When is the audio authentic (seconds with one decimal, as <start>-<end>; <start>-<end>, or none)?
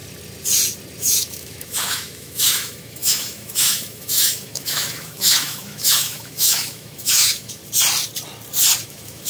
0.0-1.0; 7.6-8.8